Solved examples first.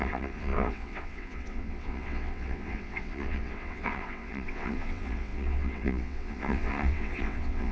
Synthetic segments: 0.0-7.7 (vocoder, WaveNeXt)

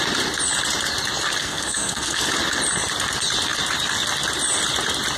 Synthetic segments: 1.4-2.3 (codec, SNAC)

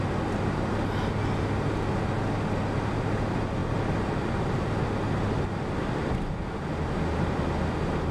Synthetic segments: none

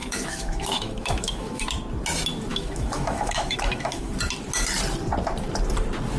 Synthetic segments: 0.0-1.6 (autoencoder, DAC-VAE); 2.5-4.1

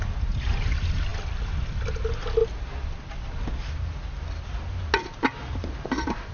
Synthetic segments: none